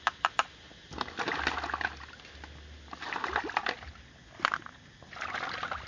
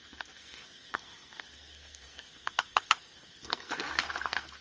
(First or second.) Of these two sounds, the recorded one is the first